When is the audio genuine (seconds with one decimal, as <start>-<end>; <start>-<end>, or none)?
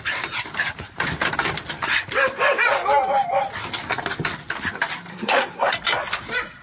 0.0-5.1; 5.7-6.6